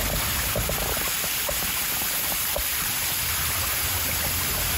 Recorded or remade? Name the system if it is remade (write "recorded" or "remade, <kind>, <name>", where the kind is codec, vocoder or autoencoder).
recorded